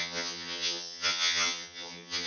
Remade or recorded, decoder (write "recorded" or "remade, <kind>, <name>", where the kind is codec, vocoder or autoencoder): remade, vocoder, HiFi-GAN